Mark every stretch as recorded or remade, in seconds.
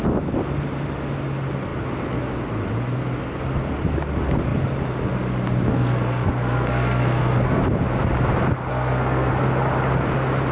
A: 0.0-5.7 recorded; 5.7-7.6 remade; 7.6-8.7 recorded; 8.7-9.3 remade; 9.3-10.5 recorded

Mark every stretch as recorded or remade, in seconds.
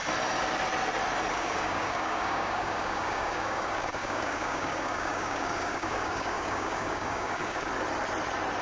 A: 0.0-1.3 recorded; 1.3-7.7 remade; 7.7-8.6 recorded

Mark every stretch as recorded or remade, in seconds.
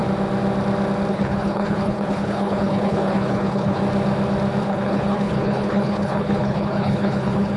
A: 0.0-1.1 recorded; 1.1-3.8 remade; 3.8-4.6 recorded; 4.6-7.6 remade